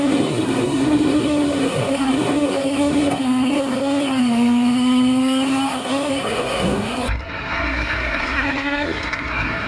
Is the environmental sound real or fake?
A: fake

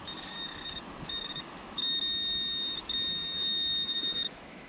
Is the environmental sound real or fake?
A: fake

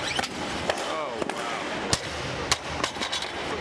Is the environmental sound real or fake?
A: real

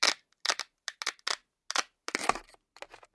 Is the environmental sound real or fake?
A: real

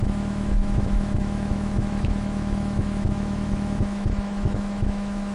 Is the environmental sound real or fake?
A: fake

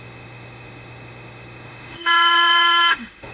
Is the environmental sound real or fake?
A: fake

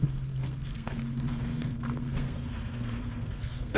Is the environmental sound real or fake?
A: fake